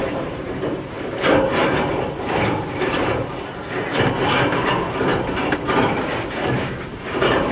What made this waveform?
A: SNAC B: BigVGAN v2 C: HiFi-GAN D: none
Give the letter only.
B